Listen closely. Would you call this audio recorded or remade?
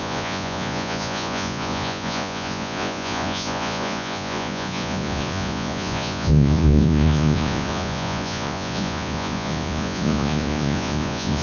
remade